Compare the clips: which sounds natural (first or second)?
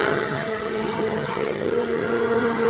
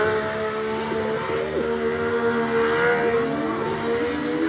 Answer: second